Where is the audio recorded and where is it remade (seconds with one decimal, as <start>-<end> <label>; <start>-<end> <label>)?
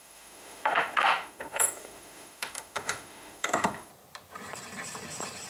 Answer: 0.0-3.9 remade; 3.9-5.5 recorded